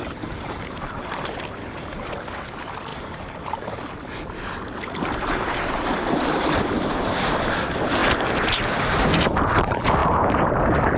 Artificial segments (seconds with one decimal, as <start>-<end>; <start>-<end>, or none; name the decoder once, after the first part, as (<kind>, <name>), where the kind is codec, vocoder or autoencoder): 0.0-1.4 (vocoder, BigVGAN v2); 2.9-3.8; 10.0-10.5